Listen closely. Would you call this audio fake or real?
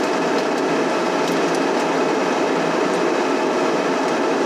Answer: real